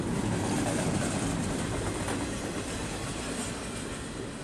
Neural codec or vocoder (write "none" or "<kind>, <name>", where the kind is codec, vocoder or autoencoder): none